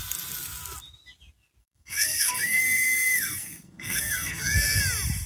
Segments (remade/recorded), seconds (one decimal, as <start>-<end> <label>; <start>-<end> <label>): 0.0-1.6 recorded; 1.6-4.8 remade; 4.8-5.3 recorded